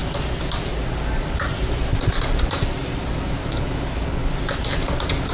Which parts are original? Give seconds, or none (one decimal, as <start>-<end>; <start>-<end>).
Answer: 0.0-3.5; 4.3-5.3